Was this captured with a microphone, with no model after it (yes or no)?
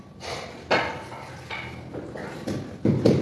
yes